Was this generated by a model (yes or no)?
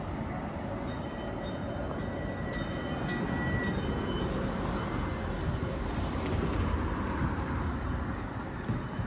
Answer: no